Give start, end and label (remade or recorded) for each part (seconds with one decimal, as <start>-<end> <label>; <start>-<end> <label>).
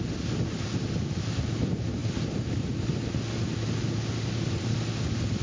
0.0-5.4 recorded